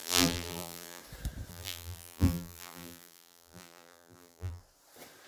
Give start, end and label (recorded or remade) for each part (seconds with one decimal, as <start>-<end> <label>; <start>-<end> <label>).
0.0-1.0 remade; 1.0-1.5 recorded; 1.5-4.6 remade; 4.6-5.3 recorded